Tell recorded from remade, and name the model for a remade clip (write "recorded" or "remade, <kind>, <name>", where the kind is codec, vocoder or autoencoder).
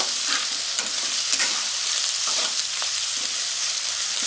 remade, vocoder, BigVGAN v2